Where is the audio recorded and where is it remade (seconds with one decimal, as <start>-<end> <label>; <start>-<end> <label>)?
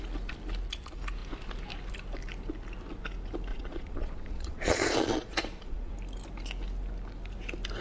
0.0-3.5 recorded; 3.5-5.9 remade; 5.9-7.8 recorded